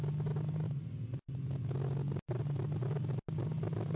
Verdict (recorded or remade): recorded